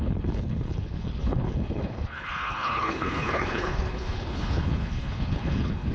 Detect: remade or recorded remade